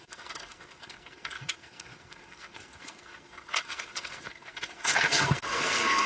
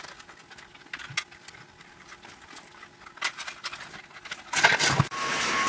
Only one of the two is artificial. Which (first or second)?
first